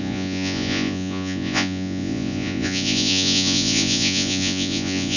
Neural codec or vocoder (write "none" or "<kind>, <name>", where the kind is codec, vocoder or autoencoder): vocoder, Vocos